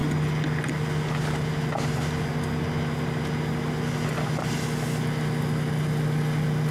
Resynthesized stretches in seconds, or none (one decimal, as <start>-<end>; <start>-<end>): none